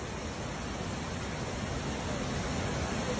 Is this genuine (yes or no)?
yes